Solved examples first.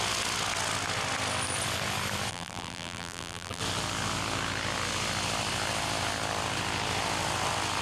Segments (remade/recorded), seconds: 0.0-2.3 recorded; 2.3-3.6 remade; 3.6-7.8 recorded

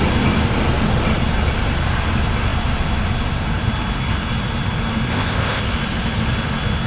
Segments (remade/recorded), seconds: 0.0-5.1 recorded; 5.1-5.6 remade; 5.6-6.9 recorded

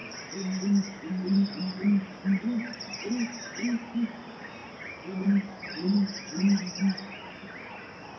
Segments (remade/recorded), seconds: 0.0-3.0 remade; 3.0-8.2 recorded

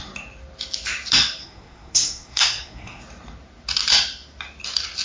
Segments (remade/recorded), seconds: 0.0-1.4 recorded; 1.4-3.0 remade; 3.0-5.0 recorded

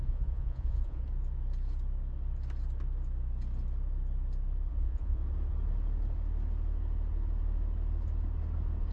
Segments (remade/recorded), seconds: 0.0-1.0 remade; 1.0-4.7 recorded; 4.7-5.2 remade; 5.2-8.9 recorded